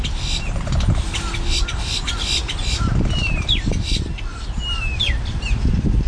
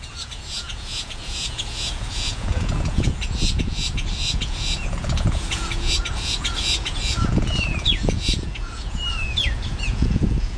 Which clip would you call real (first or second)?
first